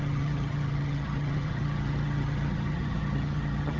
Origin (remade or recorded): remade